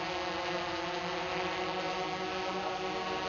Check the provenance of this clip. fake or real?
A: real